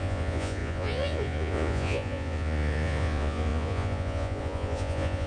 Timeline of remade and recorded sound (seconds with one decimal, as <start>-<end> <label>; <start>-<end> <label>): 0.0-5.3 remade